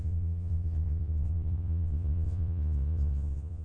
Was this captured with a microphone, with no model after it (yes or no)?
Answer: no